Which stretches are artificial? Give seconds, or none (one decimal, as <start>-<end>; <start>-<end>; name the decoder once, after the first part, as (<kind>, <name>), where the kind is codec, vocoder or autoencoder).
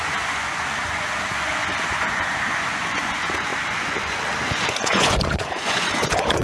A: 0.0-6.4 (vocoder, Vocos)